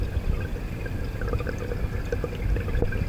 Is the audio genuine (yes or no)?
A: yes